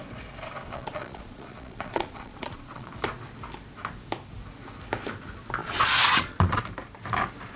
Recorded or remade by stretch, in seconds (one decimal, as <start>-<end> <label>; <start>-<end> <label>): 0.0-0.7 recorded; 0.7-2.9 remade; 2.9-5.6 recorded; 5.6-6.6 remade; 6.6-7.6 recorded